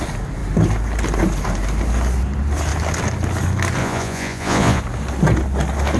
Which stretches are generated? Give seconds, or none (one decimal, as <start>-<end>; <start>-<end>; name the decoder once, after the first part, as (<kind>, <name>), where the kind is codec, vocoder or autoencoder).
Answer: 3.8-4.8 (vocoder, Vocos)